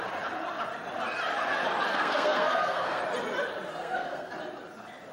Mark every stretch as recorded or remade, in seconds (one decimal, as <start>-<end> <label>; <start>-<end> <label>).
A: 0.0-1.9 recorded; 1.9-3.0 remade; 3.0-3.7 recorded; 3.7-4.3 remade; 4.3-5.1 recorded